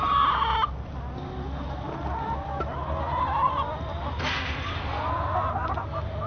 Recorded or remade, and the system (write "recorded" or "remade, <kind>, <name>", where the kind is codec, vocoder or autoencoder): recorded